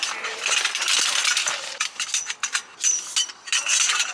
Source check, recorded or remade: recorded